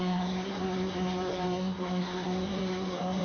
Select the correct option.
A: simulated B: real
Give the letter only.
A